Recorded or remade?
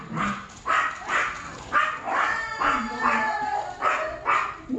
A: recorded